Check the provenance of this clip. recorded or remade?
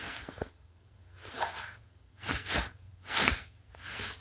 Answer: remade